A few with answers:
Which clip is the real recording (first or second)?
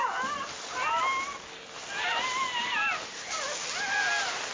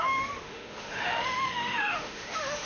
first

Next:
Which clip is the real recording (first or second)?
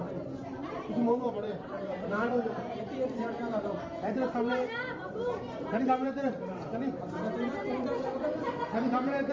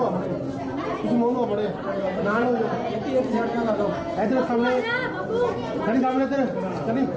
second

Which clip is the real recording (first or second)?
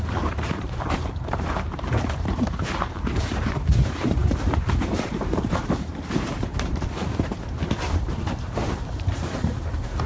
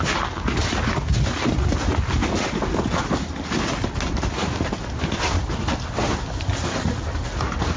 second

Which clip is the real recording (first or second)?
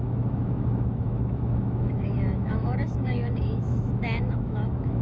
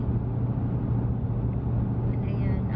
second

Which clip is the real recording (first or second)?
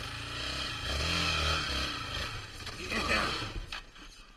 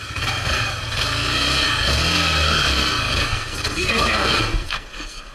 first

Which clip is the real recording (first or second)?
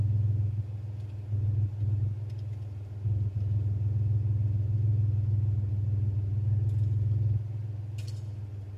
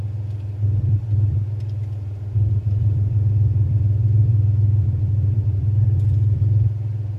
first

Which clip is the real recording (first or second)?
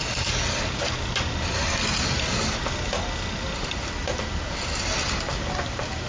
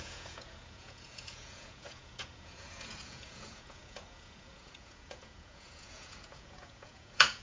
first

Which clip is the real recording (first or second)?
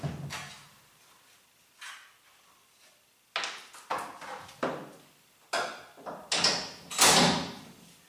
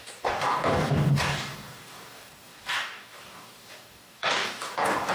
first